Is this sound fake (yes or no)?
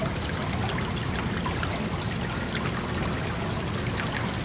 no